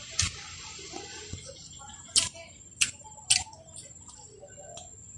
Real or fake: real